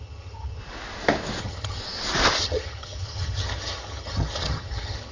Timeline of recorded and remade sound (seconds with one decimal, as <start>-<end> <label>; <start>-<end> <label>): 0.0-0.6 remade; 0.6-1.4 recorded; 1.4-1.8 remade; 1.8-2.4 recorded; 2.4-5.1 remade